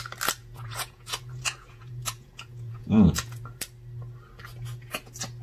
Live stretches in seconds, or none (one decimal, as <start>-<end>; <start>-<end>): 0.0-0.4; 3.6-5.4